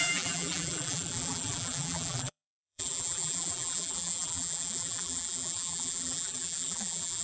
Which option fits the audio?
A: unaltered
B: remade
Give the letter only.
B